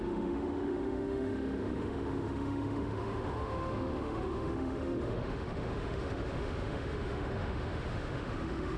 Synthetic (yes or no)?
yes